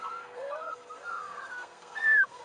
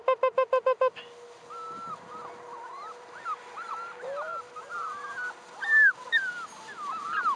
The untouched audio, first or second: second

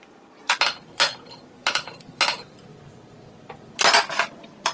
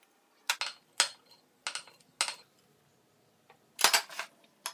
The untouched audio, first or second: second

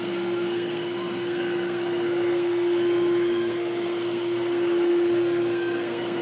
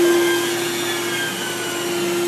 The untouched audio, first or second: second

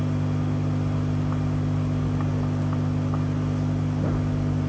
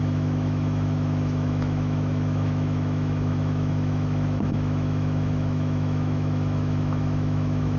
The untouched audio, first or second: first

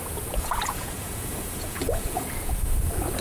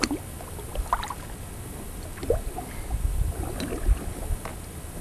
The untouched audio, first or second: second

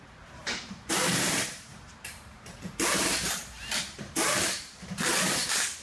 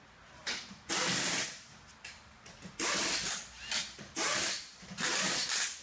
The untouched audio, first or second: second